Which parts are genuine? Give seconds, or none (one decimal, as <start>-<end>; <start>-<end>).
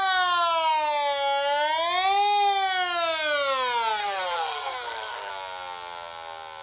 0.0-4.0; 5.3-6.6